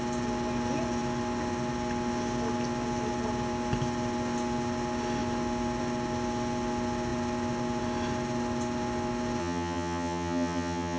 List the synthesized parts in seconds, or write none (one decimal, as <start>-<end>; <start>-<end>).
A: 9.4-11.0